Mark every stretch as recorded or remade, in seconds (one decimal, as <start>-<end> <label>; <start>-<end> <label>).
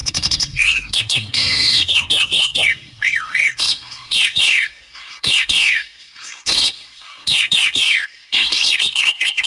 0.0-9.5 remade